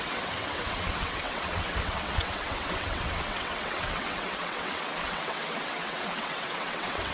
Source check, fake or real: fake